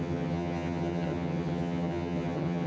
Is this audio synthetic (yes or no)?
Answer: yes